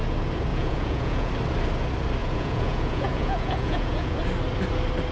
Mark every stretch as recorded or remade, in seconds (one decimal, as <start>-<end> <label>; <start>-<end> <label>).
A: 0.0-0.5 recorded; 0.5-1.3 remade; 1.3-2.2 recorded; 2.2-4.2 remade; 4.2-5.1 recorded